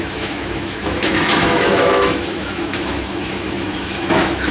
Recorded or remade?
remade